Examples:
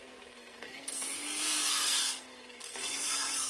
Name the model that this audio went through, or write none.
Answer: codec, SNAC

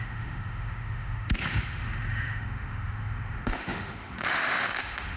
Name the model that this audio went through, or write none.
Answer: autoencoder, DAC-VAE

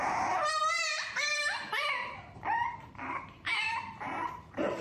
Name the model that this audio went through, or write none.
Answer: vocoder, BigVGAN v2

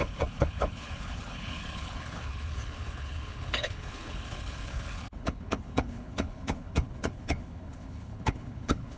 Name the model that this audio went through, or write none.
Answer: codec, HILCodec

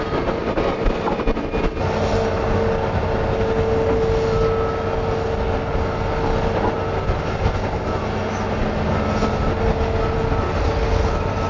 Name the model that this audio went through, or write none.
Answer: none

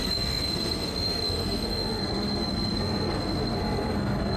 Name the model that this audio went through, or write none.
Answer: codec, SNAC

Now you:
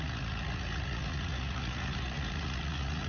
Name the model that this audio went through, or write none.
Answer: vocoder, Vocos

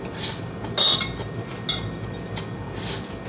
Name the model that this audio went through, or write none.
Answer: none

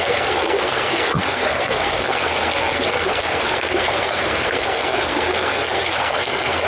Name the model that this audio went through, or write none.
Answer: codec, SNAC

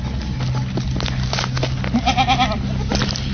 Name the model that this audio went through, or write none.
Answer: none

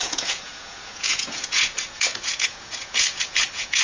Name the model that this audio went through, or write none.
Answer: vocoder, Vocos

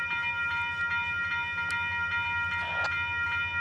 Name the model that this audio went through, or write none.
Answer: none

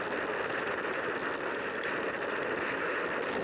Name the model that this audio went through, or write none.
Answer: none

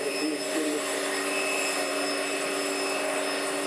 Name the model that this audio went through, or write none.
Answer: none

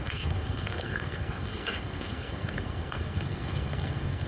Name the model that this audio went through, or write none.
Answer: codec, SNAC